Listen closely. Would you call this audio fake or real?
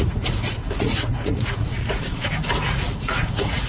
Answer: fake